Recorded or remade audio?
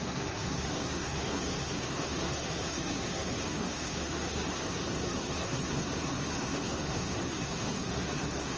remade